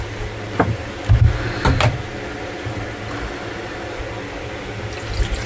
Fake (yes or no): no